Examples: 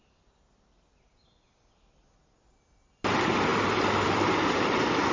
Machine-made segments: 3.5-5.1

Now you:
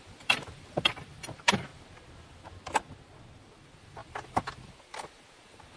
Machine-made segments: 0.0-1.7; 3.4-5.8

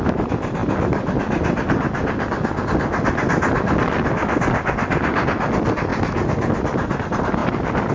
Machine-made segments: none

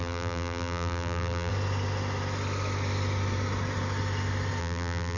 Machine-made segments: 0.0-1.5; 4.6-5.2

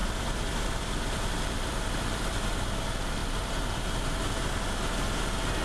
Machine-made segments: 0.0-2.8; 3.2-4.2

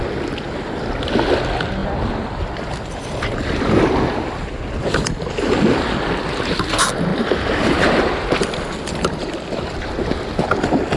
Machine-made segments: 1.8-6.4; 7.1-10.6

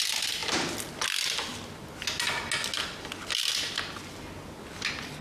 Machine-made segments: none

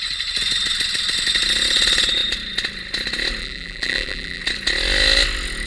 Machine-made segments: 3.4-4.4